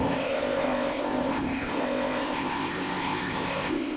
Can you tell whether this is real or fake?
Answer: fake